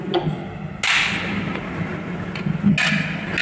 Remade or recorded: recorded